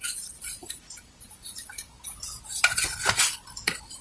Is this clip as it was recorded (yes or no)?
no